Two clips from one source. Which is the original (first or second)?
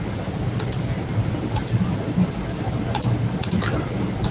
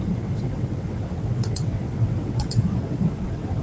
first